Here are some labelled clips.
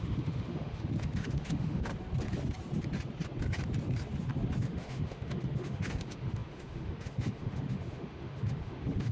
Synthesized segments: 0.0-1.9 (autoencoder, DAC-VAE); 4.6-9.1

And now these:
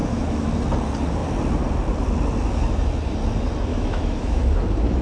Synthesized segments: 0.0-0.5 (autoencoder, DAC-VAE); 3.7-4.4

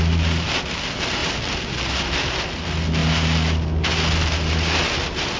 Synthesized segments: none